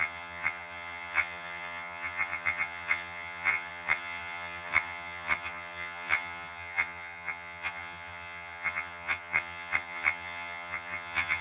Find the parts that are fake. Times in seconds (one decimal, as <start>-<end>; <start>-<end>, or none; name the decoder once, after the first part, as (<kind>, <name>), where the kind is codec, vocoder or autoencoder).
0.0-11.4 (vocoder, HiFi-GAN)